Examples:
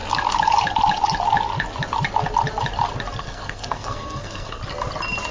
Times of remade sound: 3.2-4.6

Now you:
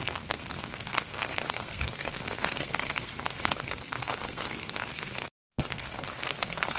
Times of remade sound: 0.0-6.8

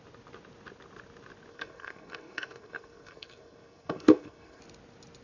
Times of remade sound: 1.5-4.6

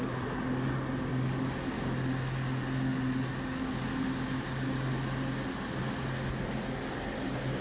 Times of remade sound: none

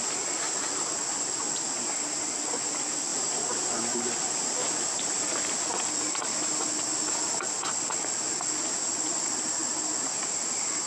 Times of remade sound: none

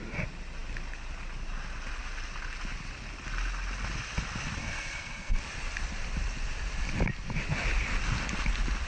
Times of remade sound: 4.6-5.4